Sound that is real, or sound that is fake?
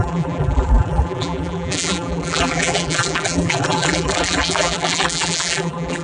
fake